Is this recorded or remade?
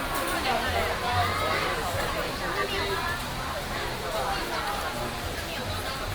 recorded